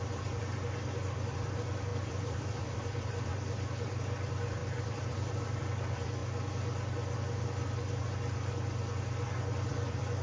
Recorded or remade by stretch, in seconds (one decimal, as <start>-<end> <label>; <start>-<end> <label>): 0.0-6.2 remade; 6.2-9.3 recorded; 9.3-10.2 remade